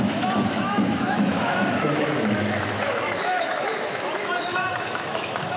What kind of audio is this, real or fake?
fake